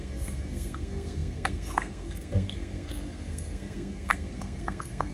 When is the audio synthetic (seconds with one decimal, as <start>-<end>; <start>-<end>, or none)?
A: 0.0-5.1